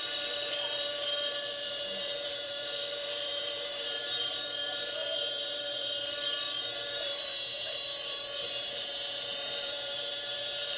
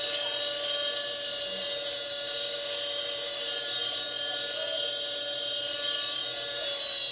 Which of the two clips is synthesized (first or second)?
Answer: first